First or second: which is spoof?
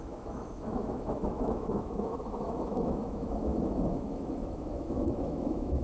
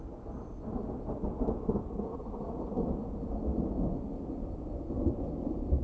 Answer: first